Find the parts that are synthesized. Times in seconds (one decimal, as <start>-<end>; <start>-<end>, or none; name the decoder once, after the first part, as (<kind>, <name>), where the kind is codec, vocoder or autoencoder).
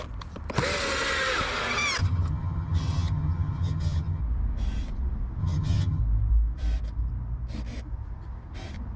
2.0-4.2 (vocoder, HiFi-GAN); 5.4-6.0